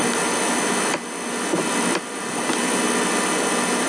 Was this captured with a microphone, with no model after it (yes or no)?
yes